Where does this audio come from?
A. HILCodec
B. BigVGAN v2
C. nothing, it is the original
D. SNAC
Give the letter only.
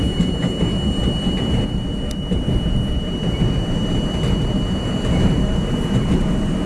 B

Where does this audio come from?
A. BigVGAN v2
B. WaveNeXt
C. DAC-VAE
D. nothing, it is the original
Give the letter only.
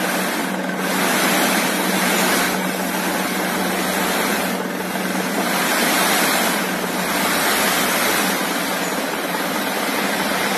D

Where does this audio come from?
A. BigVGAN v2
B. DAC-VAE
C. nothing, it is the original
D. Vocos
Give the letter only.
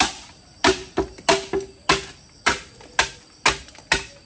C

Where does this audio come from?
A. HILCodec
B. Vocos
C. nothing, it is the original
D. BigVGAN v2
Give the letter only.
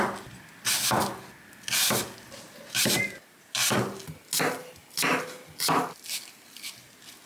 C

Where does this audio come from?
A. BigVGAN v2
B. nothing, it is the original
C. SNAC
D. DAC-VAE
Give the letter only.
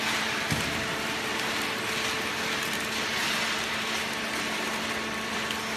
B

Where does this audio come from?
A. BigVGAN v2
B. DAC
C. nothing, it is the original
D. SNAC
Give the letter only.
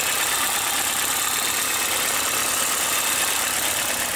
C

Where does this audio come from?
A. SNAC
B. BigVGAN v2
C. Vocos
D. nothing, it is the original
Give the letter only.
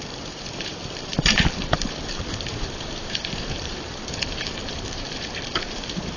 B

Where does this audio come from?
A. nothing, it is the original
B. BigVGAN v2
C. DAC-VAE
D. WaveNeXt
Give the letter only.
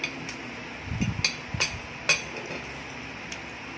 A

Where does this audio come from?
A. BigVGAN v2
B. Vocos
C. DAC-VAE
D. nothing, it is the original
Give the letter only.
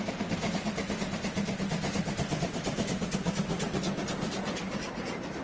D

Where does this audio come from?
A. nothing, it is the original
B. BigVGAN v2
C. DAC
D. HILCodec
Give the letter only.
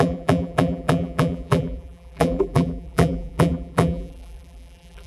B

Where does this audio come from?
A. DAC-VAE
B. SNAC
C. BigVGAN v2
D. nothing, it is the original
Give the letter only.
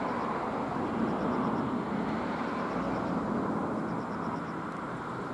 D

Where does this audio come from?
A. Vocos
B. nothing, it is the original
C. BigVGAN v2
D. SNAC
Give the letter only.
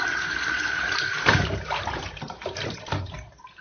C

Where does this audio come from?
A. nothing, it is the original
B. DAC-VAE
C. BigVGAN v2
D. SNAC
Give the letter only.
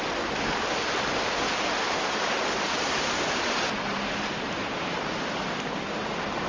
A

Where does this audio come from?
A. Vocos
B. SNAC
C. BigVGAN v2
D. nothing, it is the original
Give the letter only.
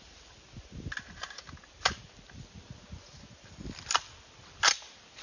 D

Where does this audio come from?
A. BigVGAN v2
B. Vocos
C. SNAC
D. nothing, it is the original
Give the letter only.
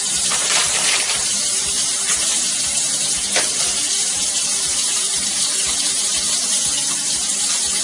A